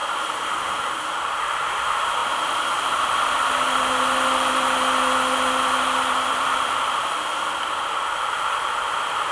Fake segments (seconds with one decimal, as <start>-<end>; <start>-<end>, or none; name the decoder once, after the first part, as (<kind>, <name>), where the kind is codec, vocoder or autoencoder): 0.0-1.3 (vocoder, BigVGAN v2); 2.2-7.1